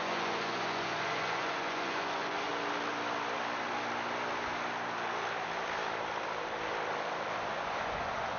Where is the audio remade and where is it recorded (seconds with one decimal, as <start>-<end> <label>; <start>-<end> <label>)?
0.0-2.5 remade; 2.5-7.5 recorded; 7.5-8.4 remade